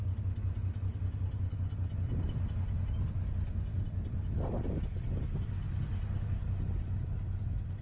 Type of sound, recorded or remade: recorded